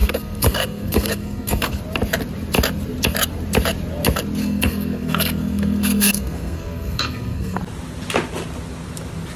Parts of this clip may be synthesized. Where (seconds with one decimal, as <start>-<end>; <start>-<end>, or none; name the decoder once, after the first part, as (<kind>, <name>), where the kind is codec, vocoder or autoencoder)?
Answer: 0.0-1.8 (codec, SNAC); 4.4-7.6